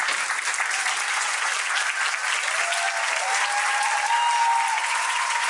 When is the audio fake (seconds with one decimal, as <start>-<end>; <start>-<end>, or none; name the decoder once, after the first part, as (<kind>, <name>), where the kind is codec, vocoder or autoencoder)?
1.1-1.5 (vocoder, Vocos); 4.8-5.5